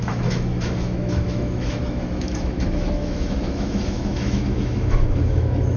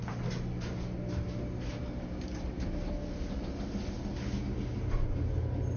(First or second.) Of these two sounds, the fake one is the first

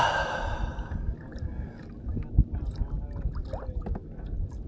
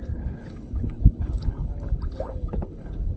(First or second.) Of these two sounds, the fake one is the second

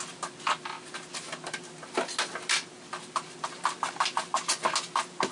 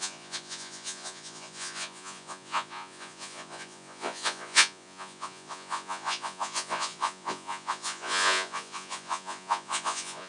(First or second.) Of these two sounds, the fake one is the second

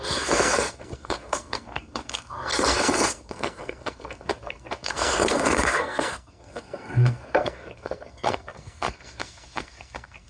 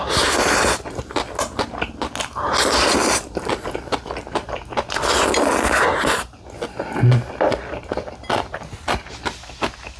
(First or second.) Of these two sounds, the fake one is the first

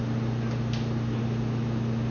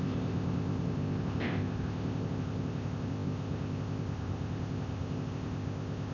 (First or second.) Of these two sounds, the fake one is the second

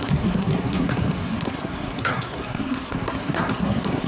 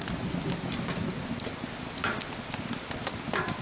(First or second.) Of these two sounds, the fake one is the first